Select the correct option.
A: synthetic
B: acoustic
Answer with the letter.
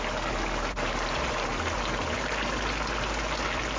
B